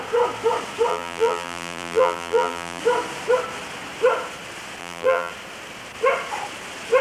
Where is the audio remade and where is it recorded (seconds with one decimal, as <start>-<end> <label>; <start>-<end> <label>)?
0.0-0.9 recorded; 0.9-2.8 remade; 2.8-4.8 recorded; 4.8-5.3 remade; 5.3-7.0 recorded